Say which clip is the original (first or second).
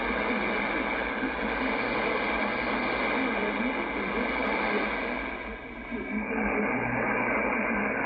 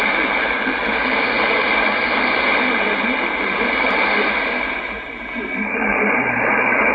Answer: first